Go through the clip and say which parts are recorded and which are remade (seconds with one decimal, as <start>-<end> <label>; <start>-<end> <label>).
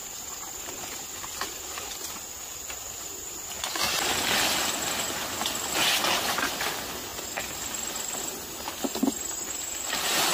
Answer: 0.0-10.3 recorded